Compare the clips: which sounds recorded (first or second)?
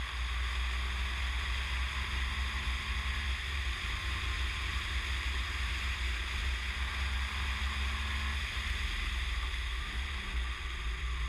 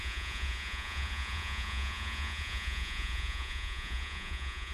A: first